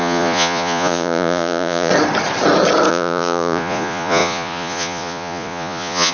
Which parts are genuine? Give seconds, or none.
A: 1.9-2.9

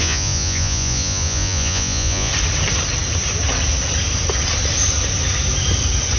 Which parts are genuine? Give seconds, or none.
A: 2.3-6.2

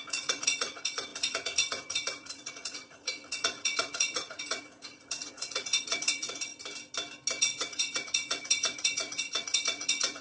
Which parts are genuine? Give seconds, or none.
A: 6.5-7.4

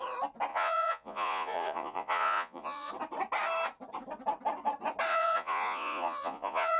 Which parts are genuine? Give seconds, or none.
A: 0.0-0.5; 2.9-5.1

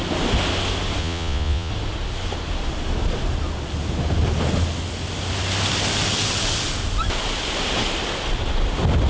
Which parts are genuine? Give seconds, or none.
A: 0.0-1.0; 1.7-9.1

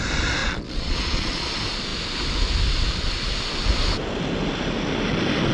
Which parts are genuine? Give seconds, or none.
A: 0.0-0.4; 1.5-5.5

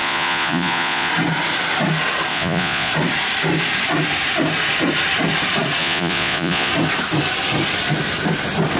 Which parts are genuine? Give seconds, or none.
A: 1.1-2.3; 2.9-5.8; 6.7-8.8

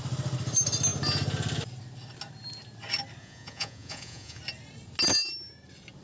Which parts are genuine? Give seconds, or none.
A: 0.0-3.2; 4.4-6.0